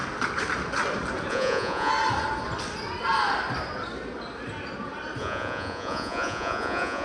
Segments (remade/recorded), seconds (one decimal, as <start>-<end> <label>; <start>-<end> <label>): 0.0-1.3 recorded; 1.3-1.9 remade; 1.9-5.2 recorded; 5.2-7.0 remade